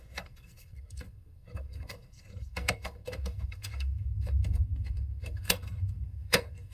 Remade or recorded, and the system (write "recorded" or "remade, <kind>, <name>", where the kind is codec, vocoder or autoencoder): remade, codec, SNAC